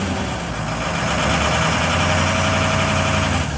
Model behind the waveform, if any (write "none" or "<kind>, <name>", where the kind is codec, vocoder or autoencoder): none